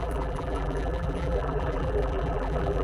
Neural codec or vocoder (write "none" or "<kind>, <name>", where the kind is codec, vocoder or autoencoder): vocoder, BigVGAN v2